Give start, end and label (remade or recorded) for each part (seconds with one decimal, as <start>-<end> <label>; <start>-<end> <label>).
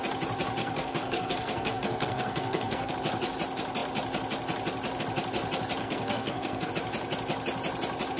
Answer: 0.0-0.6 recorded; 0.6-2.9 remade; 2.9-5.8 recorded; 5.8-6.7 remade; 6.7-8.2 recorded